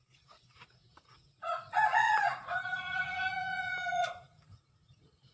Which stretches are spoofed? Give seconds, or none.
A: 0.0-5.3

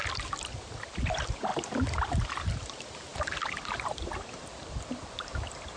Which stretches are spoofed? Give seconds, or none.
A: 0.5-1.5; 2.5-5.8

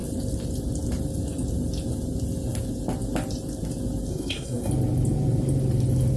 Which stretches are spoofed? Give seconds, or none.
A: 4.1-4.7

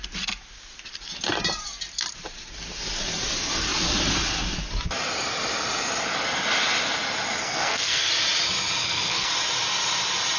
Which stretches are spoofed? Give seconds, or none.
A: 7.4-8.1; 8.8-9.3